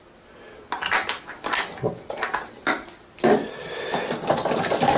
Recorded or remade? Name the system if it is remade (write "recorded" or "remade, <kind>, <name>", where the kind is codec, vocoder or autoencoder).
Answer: recorded